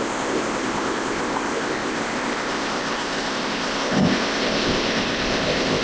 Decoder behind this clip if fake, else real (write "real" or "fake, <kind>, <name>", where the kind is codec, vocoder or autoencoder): fake, codec, ZipCodec